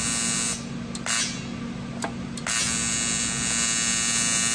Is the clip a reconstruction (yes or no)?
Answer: no